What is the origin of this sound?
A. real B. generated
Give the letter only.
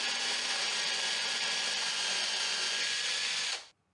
B